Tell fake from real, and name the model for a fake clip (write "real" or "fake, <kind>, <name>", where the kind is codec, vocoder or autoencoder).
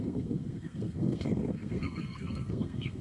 fake, codec, SNAC